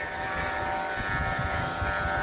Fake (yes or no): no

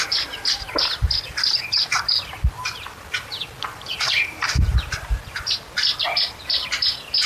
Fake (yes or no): yes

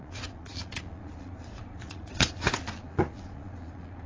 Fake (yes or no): yes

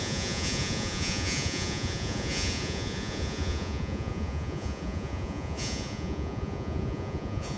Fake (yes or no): yes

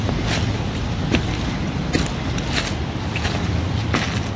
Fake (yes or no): no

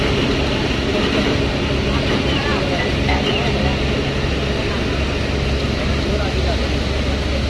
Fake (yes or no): no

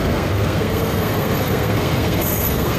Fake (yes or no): yes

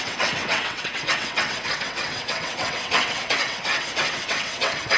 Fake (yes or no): yes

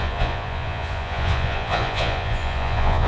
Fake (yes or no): yes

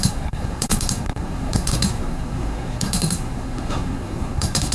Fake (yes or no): yes